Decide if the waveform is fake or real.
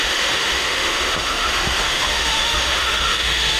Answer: fake